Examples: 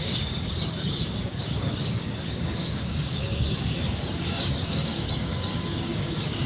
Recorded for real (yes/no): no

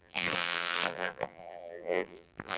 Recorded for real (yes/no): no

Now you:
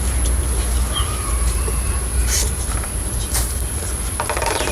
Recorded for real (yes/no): no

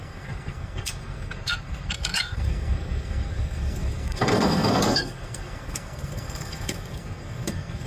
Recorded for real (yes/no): no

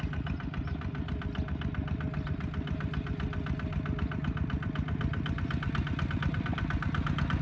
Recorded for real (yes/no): yes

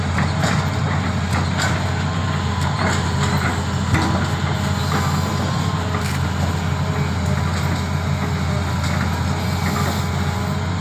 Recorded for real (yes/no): yes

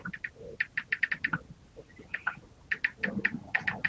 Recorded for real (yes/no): yes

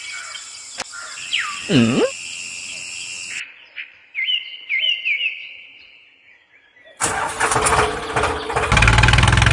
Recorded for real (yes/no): yes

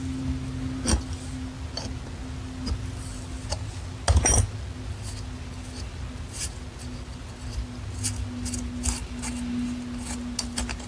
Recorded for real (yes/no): yes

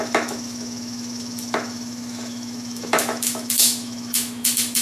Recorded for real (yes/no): no